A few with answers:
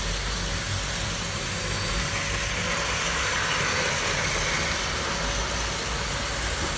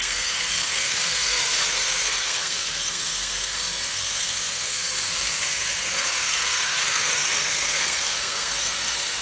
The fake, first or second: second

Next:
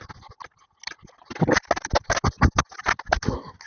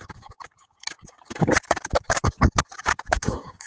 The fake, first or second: second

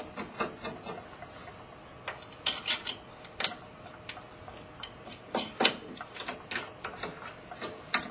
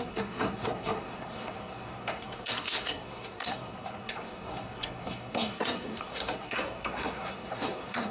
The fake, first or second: second